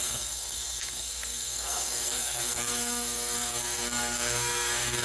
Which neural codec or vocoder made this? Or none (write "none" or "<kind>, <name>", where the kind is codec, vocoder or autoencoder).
codec, SNAC